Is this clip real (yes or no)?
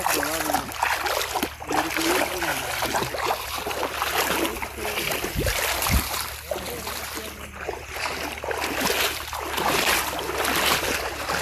yes